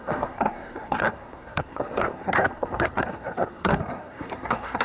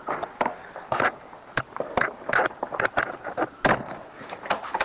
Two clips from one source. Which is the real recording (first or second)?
second